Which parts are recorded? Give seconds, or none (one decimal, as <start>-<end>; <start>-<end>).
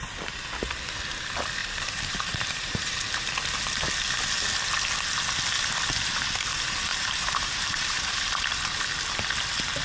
0.0-1.6; 3.4-6.9; 8.4-9.8